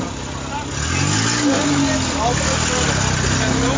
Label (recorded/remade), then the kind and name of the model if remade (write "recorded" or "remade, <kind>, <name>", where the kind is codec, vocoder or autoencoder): recorded